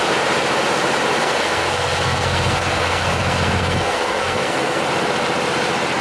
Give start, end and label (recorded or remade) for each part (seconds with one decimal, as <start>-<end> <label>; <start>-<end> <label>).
0.0-1.2 recorded; 1.2-4.8 remade; 4.8-6.0 recorded